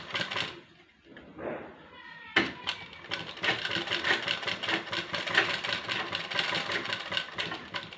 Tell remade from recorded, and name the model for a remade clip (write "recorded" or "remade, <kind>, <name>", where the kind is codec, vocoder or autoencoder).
recorded